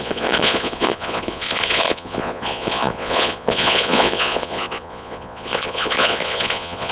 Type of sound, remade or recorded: remade